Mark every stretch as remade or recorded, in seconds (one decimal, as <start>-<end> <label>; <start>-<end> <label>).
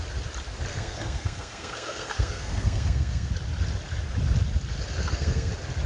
0.0-0.7 recorded; 0.7-3.3 remade; 3.3-5.0 recorded; 5.0-5.5 remade; 5.5-5.9 recorded